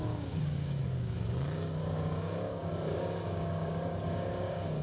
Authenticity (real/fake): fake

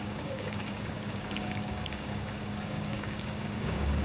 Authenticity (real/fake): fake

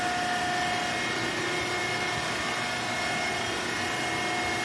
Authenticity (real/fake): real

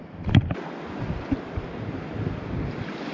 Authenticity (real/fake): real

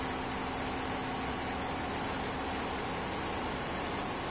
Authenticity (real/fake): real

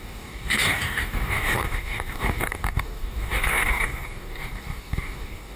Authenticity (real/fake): fake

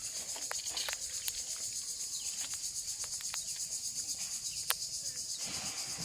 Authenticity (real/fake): real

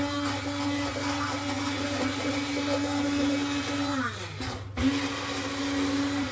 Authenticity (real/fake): real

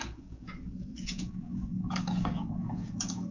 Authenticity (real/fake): fake